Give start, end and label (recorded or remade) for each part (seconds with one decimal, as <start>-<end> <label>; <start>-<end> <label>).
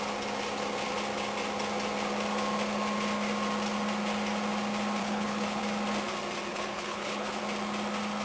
0.0-5.0 recorded; 5.0-5.6 remade; 5.6-6.5 recorded; 6.5-7.4 remade; 7.4-8.2 recorded